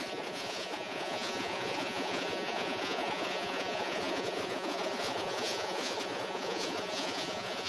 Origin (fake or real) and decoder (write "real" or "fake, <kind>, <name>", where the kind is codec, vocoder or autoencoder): fake, vocoder, Vocos